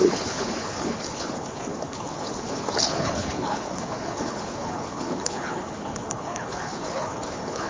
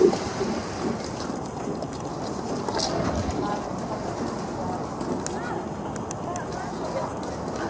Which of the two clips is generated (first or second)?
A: first